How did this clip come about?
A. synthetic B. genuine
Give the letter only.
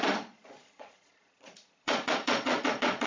A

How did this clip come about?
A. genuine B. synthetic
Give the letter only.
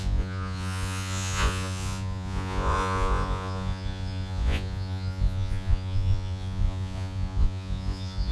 B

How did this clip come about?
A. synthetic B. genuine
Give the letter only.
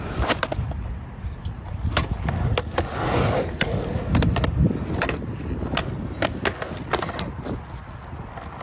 B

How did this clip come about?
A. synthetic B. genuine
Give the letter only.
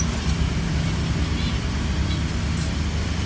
B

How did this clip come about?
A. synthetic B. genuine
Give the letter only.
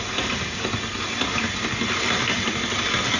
B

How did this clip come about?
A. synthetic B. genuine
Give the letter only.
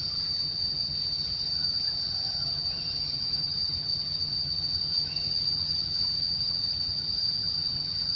A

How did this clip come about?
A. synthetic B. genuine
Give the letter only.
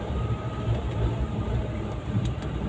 A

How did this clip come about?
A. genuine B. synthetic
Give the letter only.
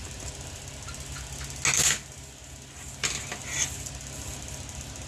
A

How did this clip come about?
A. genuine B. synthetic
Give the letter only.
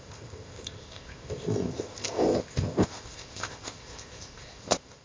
B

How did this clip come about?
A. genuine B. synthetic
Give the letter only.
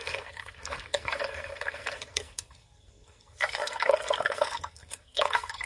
B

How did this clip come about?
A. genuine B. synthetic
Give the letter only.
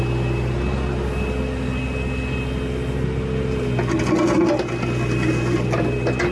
A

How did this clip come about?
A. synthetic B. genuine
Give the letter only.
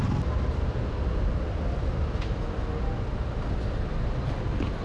B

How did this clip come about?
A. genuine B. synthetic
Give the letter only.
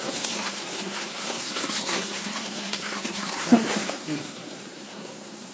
B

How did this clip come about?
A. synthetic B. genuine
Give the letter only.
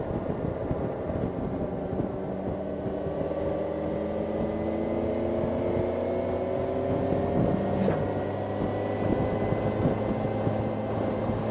B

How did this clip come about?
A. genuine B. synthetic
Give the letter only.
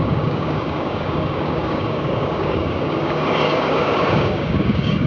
B